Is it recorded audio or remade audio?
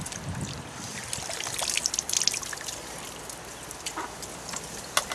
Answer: recorded